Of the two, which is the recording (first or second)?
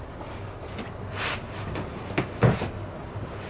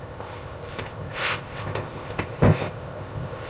first